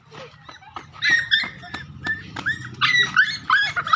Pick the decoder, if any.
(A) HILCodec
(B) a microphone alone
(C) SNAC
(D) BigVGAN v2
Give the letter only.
B